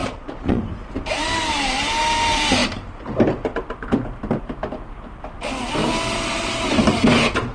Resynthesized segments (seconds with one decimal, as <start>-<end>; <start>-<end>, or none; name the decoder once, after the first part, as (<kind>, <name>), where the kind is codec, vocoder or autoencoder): 0.0-0.6 (vocoder, Vocos)